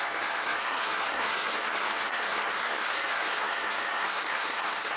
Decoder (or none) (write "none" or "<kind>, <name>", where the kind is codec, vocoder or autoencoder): codec, SNAC